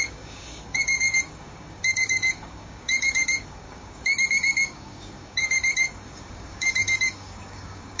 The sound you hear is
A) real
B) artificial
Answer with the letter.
B